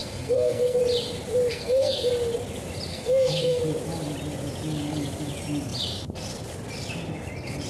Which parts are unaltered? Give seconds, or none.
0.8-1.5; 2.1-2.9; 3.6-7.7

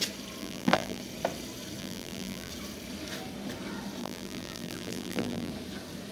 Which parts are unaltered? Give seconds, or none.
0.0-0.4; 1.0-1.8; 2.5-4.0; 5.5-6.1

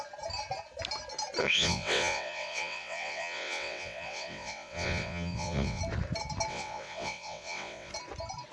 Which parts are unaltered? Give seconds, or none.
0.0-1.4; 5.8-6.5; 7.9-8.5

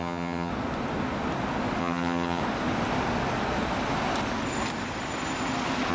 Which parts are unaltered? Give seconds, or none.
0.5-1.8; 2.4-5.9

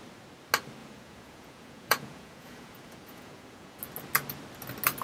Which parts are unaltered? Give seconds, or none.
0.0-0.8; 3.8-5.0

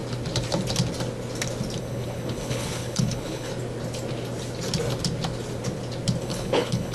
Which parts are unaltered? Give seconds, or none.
0.0-1.8; 3.5-6.2